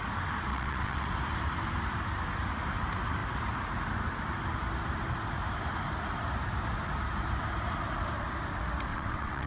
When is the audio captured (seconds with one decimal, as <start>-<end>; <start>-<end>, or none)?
0.0-0.5; 1.1-8.9